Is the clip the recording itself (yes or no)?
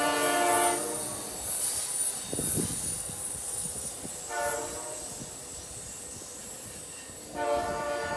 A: yes